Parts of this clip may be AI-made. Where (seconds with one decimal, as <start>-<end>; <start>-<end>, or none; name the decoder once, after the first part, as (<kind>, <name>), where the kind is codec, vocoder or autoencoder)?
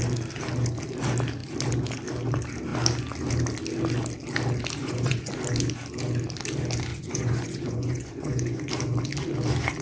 4.8-5.3 (vocoder, Vocos); 6.9-8.7